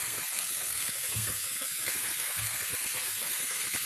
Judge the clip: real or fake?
fake